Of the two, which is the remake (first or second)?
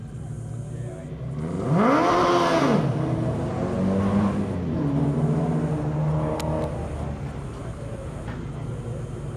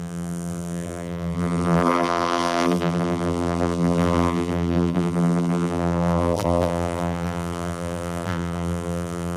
second